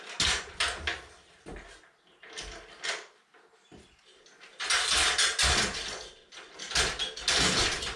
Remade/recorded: recorded